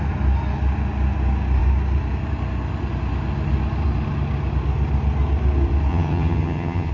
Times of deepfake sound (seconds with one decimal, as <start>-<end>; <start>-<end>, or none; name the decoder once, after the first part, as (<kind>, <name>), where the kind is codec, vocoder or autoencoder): 5.9-6.9 (vocoder, HiFi-GAN)